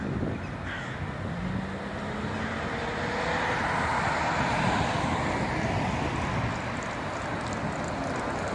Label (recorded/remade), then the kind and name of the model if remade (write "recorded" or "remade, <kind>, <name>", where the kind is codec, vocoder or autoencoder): recorded